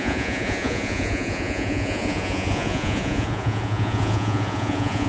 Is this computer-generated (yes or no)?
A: yes